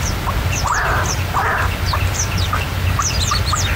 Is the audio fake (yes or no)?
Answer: no